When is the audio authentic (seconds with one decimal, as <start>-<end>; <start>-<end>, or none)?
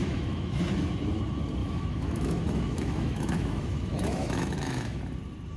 0.6-1.6; 5.0-5.6